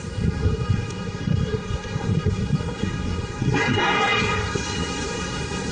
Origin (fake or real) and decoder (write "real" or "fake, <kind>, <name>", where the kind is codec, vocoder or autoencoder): fake, codec, SNAC